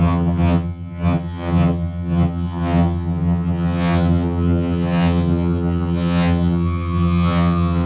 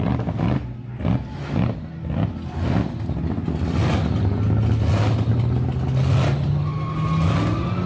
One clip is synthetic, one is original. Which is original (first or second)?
second